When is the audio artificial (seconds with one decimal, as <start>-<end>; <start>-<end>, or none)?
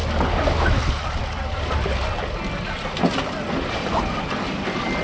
none